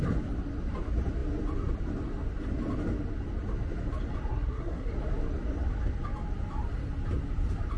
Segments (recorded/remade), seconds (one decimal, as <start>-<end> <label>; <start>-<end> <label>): 0.0-4.3 recorded; 4.3-4.9 remade; 4.9-7.8 recorded